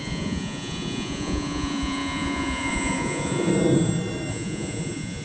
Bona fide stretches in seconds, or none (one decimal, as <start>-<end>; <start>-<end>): 3.5-4.3